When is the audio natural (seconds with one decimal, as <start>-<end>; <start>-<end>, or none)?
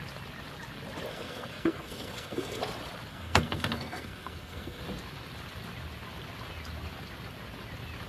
0.0-1.1; 2.6-3.1; 4.8-8.1